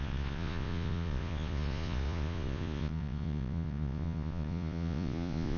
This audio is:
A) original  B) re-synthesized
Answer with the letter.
B